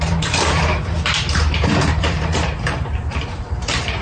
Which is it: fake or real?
fake